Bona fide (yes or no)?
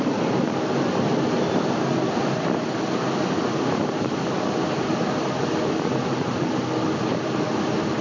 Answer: yes